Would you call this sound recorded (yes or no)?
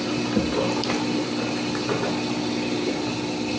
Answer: yes